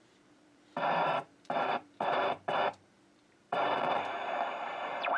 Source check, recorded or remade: remade